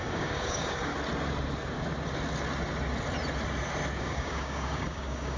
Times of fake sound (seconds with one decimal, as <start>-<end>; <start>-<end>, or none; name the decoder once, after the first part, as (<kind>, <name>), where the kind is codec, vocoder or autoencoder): 0.0-0.9 (codec, DAC); 4.0-5.4